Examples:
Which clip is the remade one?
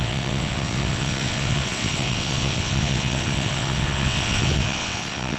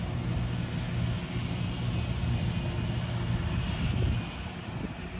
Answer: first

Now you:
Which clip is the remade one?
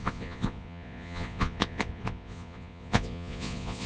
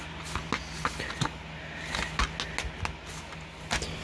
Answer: first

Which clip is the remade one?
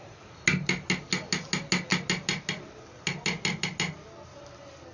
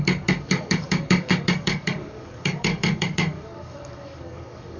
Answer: second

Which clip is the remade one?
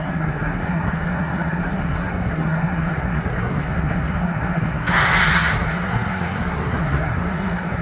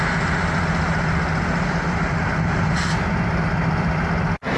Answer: first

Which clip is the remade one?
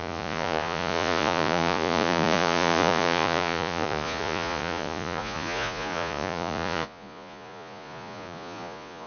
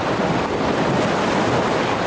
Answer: first